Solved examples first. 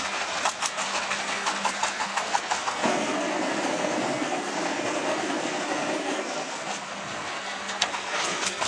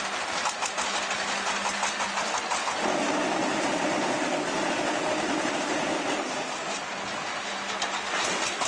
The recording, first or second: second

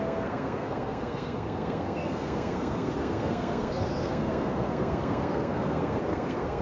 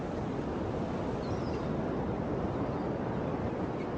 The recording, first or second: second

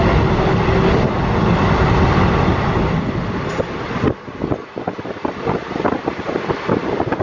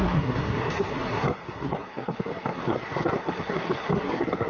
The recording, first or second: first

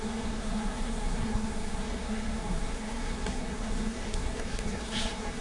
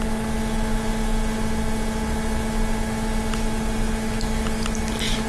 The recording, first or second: second